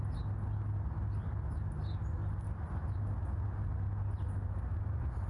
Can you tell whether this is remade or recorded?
recorded